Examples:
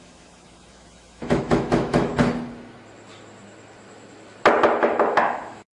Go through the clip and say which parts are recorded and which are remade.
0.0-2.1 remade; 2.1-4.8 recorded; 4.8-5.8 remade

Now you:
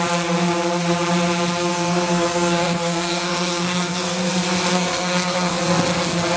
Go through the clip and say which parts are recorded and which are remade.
0.0-1.7 recorded; 1.7-4.3 remade; 4.3-4.7 recorded; 4.7-5.6 remade; 5.6-6.4 recorded

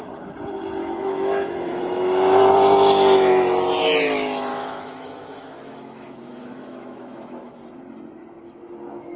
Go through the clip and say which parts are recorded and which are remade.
0.0-0.8 recorded; 0.8-2.4 remade; 2.4-4.5 recorded; 4.5-7.6 remade; 7.6-9.2 recorded

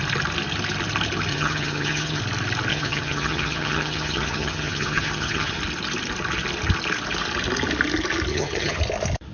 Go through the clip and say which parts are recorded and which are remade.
0.0-1.3 recorded; 1.3-2.2 remade; 2.2-2.7 recorded; 2.7-5.6 remade; 5.6-8.3 recorded; 8.3-8.8 remade; 8.8-9.3 recorded

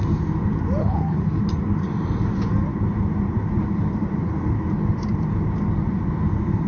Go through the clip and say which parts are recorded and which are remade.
0.0-0.8 recorded; 0.8-1.4 remade; 1.4-6.7 recorded

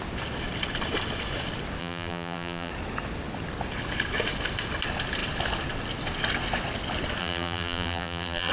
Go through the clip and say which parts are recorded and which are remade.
0.0-1.8 recorded; 1.8-2.7 remade; 2.7-7.2 recorded; 7.2-8.5 remade

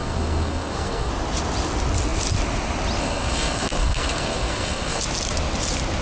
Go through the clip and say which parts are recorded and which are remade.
0.0-1.1 remade; 1.1-3.0 recorded; 3.0-5.0 remade; 5.0-6.0 recorded

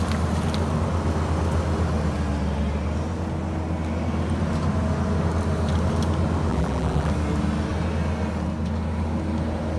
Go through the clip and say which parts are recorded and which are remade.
0.0-6.5 recorded; 6.5-7.1 remade; 7.1-9.8 recorded